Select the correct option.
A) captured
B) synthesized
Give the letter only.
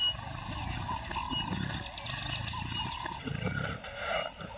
A